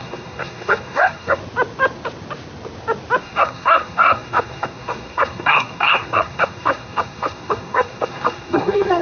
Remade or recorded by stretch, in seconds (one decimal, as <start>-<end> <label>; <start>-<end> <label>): 0.0-1.4 remade; 1.4-3.2 recorded; 3.2-9.0 remade